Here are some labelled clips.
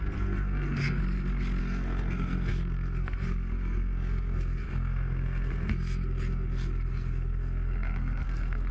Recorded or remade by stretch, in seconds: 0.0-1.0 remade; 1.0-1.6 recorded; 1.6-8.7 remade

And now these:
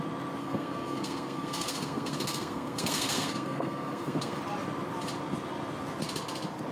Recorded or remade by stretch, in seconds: 0.0-0.4 recorded; 0.4-4.4 remade; 4.4-6.7 recorded

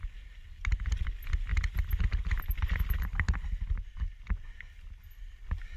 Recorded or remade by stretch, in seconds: 0.0-5.8 recorded

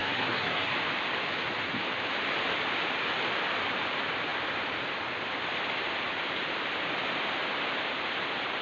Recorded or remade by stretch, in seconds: 0.0-0.7 remade; 0.7-8.6 recorded

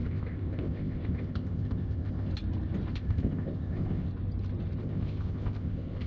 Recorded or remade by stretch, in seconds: 0.0-2.3 remade; 2.3-2.9 recorded; 2.9-4.1 remade; 4.1-4.8 recorded; 4.8-6.1 remade

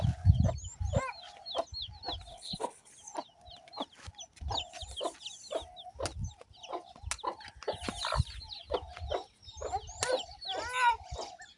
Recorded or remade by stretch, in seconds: 0.0-2.3 recorded; 2.3-2.9 remade; 2.9-11.6 recorded